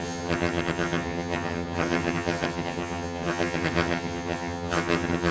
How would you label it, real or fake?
fake